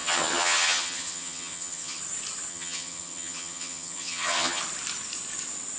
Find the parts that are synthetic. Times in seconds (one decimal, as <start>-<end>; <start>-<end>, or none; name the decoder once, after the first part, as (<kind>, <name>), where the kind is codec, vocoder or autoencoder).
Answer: 0.0-2.0 (vocoder, HiFi-GAN); 2.5-4.6